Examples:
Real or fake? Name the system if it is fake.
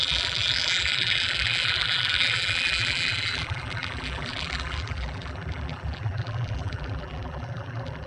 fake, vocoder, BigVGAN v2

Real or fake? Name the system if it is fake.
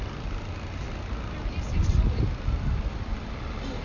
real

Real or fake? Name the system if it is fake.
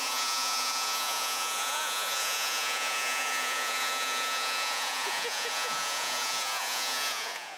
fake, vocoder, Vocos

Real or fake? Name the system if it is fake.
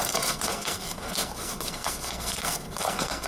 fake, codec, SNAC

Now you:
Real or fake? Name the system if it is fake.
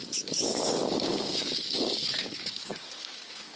fake, codec, DAC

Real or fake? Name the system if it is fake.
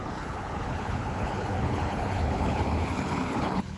fake, codec, HILCodec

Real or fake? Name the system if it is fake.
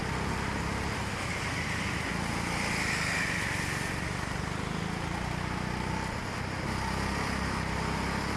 real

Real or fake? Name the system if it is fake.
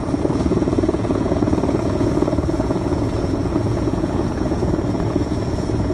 fake, vocoder, Vocos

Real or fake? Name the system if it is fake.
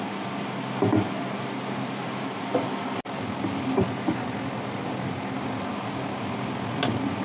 real